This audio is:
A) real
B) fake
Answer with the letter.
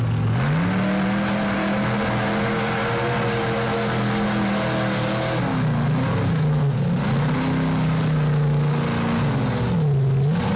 A